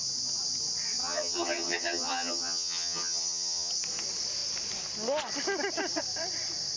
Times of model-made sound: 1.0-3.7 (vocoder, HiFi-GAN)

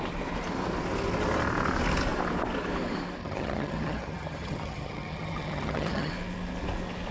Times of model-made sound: 3.2-6.1 (vocoder, HiFi-GAN)

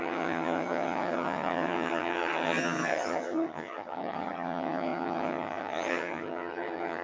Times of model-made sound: 0.0-7.0 (vocoder, HiFi-GAN)